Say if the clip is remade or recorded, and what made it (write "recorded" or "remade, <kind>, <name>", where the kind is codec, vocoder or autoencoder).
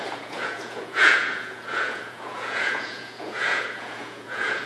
remade, vocoder, Vocos